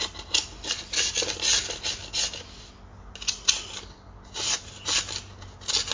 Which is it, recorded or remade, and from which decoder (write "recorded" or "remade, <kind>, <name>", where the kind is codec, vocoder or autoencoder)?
recorded